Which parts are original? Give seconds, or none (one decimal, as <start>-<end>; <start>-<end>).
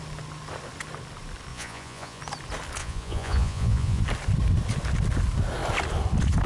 0.0-1.5; 2.2-2.8; 4.0-6.5